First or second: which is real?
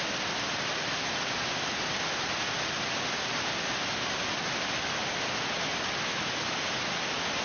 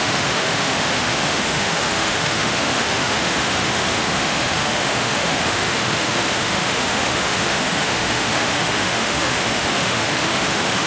first